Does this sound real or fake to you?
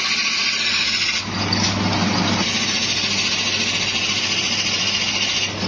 real